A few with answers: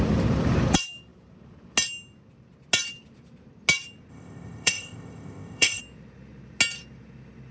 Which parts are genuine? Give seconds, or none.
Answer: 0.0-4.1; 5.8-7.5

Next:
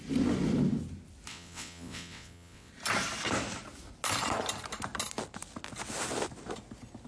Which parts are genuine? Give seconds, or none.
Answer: 0.0-1.3; 2.7-7.1

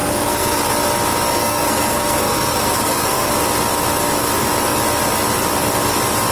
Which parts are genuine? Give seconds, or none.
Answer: 0.6-1.3; 3.3-6.3

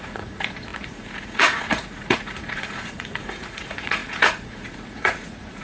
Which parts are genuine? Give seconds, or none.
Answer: none